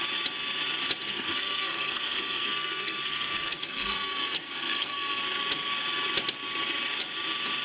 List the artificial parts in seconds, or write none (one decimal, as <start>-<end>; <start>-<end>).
1.1-5.2